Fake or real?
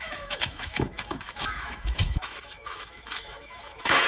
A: fake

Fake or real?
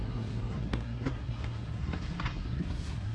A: fake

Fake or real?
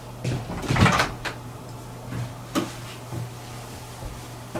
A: real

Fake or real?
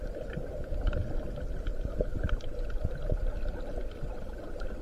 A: real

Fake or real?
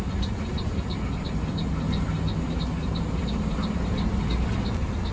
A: real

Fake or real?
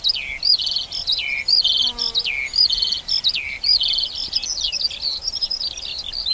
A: real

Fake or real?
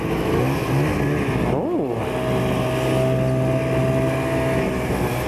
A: real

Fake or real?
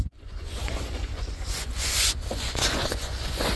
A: fake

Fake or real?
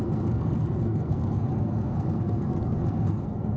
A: fake